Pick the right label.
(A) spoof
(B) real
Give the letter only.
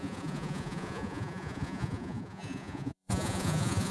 A